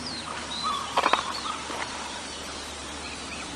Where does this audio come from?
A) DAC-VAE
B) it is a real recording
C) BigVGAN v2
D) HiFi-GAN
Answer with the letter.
C